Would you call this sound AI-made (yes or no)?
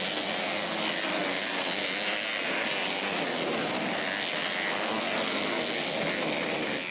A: no